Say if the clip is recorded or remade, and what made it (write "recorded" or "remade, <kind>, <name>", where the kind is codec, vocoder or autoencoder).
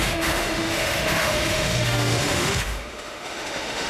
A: remade, autoencoder, DAC-VAE